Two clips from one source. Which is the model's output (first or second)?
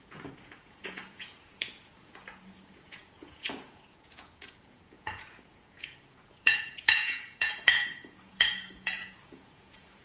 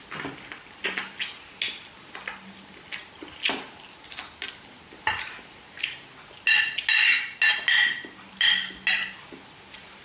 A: first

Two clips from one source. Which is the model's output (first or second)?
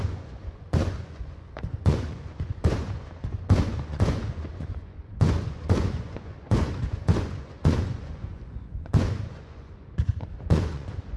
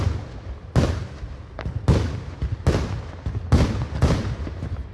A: first